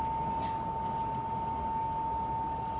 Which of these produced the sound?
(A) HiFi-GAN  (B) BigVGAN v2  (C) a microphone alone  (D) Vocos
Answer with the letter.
C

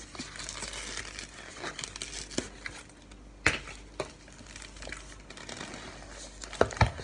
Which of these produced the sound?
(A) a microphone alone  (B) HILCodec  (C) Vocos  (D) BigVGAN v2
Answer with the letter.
A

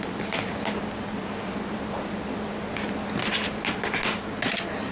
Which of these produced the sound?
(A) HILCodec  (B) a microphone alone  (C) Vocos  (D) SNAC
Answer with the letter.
B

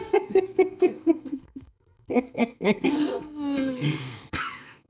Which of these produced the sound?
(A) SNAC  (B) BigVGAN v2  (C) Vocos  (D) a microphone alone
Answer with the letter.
A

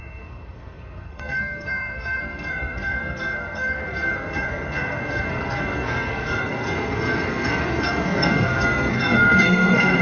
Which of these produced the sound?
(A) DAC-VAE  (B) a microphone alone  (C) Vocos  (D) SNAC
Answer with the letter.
D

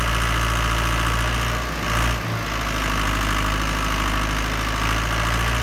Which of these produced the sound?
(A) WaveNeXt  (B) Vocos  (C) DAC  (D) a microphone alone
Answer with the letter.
D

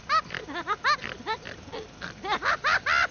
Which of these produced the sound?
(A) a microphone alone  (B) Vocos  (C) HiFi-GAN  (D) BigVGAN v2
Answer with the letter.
A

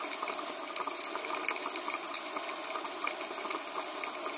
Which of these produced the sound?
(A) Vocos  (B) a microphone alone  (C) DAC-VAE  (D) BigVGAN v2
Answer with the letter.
B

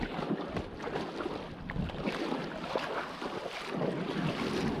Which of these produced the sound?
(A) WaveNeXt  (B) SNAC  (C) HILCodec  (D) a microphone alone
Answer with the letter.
D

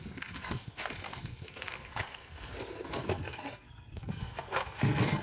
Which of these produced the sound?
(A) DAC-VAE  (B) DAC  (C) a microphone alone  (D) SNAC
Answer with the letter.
D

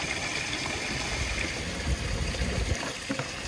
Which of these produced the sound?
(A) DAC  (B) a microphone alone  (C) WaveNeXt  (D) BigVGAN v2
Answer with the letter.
B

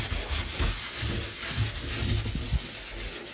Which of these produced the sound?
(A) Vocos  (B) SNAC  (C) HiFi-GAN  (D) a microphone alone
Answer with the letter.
D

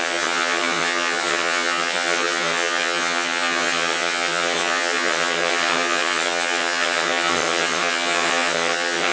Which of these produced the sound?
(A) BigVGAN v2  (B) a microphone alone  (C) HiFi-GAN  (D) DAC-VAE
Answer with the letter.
C